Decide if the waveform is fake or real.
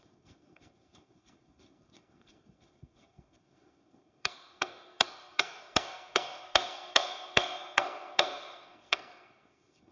fake